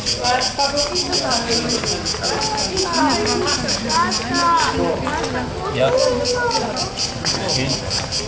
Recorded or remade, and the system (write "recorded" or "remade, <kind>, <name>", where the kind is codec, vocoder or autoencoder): recorded